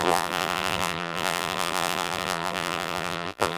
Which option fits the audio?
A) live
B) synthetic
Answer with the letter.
B